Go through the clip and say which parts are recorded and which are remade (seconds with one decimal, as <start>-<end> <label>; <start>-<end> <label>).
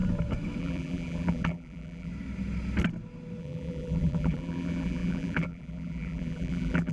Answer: 0.0-0.6 recorded; 0.6-2.1 remade; 2.1-3.4 recorded; 3.4-6.9 remade